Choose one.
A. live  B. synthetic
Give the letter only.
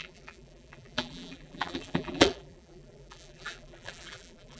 B